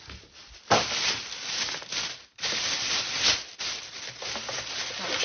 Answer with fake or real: real